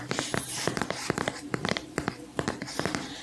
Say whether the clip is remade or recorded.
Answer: remade